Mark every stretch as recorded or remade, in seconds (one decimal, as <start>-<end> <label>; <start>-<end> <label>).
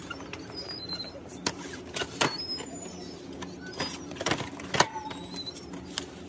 0.0-6.3 recorded